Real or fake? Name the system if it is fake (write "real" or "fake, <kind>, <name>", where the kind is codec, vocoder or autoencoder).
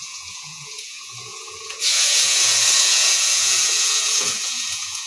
fake, vocoder, Vocos